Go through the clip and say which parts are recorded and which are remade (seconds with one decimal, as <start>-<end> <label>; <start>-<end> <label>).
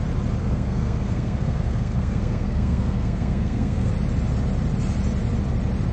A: 0.0-0.4 recorded; 0.4-3.9 remade; 3.9-5.9 recorded